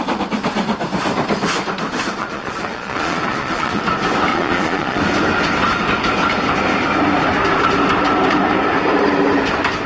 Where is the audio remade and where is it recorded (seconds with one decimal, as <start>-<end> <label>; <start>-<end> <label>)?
0.0-2.2 recorded; 2.2-3.8 remade; 3.8-4.3 recorded; 4.3-5.0 remade; 5.0-9.9 recorded